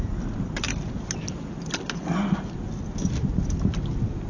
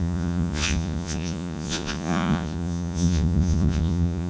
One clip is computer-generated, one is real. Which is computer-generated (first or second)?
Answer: second